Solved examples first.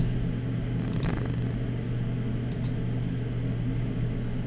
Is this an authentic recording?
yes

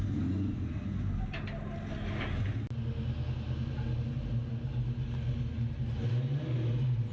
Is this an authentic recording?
yes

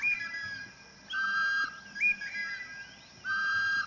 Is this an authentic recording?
yes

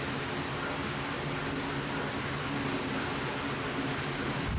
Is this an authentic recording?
yes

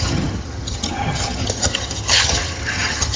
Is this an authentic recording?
no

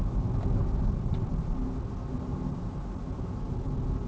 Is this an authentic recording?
yes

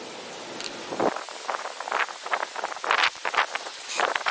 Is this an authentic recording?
yes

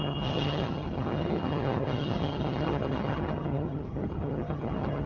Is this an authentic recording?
no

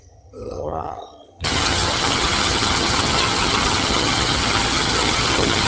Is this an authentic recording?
no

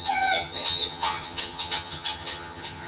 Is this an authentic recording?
no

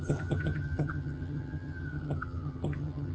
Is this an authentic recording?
no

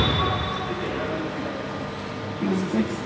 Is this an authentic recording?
yes